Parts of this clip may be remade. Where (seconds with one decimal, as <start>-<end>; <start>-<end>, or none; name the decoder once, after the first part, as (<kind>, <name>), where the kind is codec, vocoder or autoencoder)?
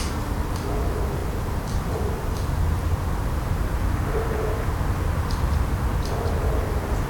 0.0-5.9 (vocoder, BigVGAN v2); 6.4-7.1